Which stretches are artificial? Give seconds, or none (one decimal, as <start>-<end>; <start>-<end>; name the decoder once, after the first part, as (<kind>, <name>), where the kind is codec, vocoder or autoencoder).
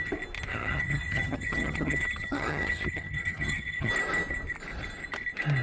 0.5-3.9 (vocoder, HiFi-GAN)